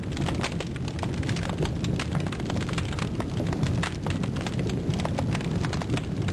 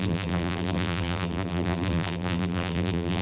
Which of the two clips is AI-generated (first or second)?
second